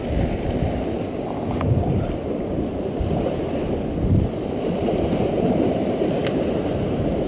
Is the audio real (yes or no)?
yes